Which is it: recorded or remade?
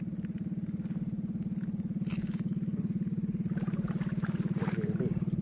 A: recorded